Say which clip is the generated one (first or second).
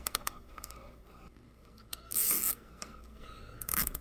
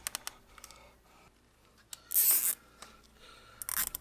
first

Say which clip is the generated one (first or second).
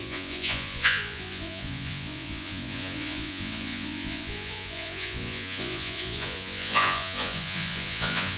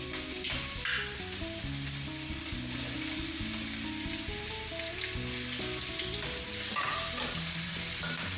first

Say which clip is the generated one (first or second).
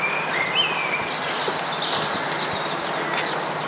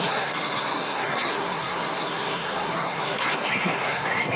second